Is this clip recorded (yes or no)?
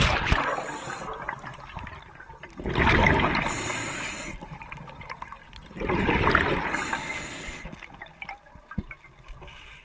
yes